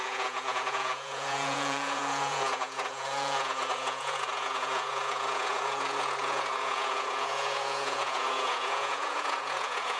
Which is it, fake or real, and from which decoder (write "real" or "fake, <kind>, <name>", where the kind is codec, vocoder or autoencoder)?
fake, vocoder, Vocos